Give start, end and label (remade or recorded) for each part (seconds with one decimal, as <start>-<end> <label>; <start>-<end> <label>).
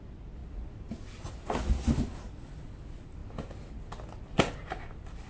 0.0-5.3 recorded